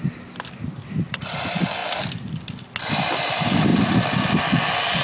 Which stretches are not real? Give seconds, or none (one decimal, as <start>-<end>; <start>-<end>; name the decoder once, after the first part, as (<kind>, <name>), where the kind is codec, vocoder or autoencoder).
none